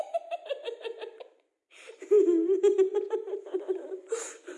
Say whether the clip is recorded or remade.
remade